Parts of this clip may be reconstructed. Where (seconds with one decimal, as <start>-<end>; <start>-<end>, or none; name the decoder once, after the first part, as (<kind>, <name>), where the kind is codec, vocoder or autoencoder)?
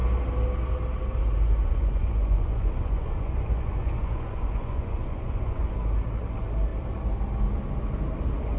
1.6-5.7 (vocoder, Vocos)